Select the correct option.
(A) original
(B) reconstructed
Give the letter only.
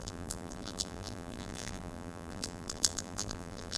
B